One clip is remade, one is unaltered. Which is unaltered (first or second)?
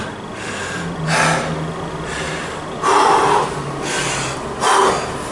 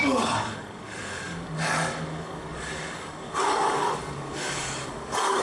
first